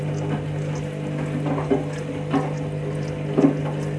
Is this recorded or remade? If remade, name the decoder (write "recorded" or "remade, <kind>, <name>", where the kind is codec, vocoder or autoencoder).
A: recorded